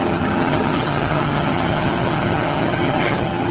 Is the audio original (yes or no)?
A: no